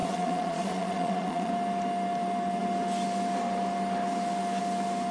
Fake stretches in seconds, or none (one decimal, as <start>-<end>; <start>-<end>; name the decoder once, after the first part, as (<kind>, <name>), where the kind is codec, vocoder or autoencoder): 0.0-1.5 (vocoder, Vocos)